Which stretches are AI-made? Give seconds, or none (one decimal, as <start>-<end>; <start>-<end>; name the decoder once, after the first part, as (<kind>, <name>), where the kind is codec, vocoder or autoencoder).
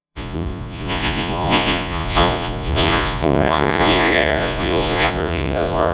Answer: 0.0-5.9 (vocoder, Vocos)